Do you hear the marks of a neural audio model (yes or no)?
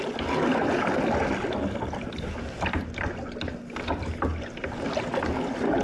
no